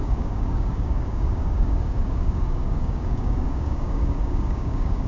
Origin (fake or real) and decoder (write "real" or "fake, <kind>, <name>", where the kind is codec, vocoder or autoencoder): fake, codec, DAC